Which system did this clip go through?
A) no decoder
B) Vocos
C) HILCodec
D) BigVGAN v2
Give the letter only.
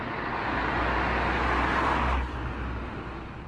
A